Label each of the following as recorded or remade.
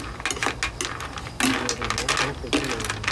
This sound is recorded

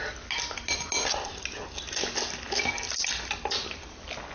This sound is recorded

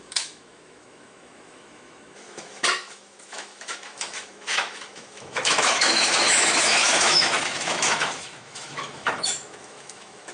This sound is remade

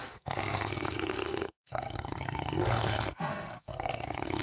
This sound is remade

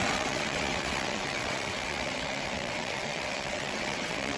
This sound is remade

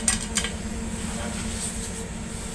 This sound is recorded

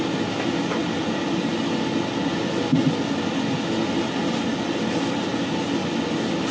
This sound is recorded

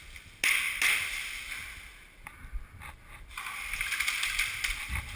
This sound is recorded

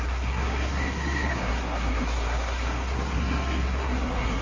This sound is remade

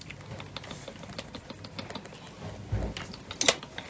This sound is recorded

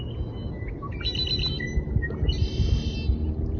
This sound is recorded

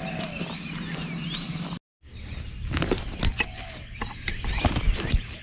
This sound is recorded